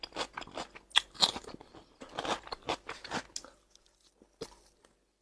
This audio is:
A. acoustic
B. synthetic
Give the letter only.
A